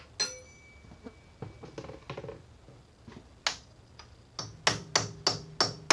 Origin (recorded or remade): recorded